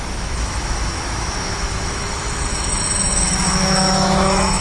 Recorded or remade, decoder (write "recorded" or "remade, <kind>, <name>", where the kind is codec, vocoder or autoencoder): remade, autoencoder, DAC-VAE